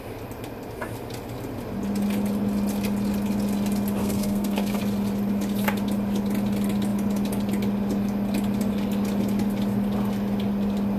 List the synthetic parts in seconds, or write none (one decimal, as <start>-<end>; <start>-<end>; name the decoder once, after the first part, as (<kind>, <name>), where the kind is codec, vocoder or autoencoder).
4.0-4.8 (codec, SNAC)